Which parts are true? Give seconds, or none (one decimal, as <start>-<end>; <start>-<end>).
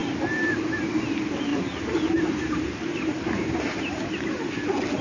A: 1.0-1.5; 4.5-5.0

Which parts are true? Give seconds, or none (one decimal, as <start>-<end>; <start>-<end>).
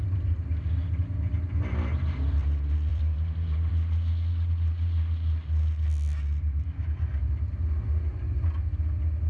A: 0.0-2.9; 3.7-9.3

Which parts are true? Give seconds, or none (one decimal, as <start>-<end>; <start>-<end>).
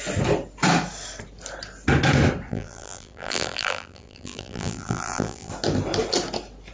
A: 0.0-2.5; 5.5-6.7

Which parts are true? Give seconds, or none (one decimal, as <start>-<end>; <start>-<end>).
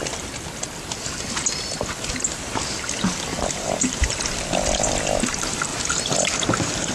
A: 0.0-3.3; 4.2-5.7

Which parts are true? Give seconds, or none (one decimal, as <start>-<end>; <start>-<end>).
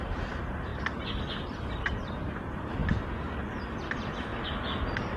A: 0.7-1.8; 4.3-5.2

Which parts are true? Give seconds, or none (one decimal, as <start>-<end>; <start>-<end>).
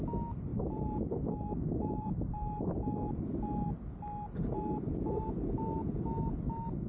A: 0.0-0.5; 2.6-6.9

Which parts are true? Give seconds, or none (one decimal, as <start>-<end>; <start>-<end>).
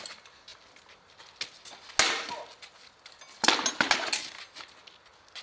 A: 0.0-5.4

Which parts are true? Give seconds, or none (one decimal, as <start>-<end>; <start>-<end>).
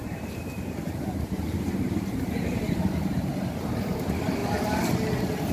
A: 3.3-5.5